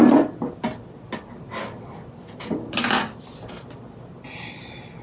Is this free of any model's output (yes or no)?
yes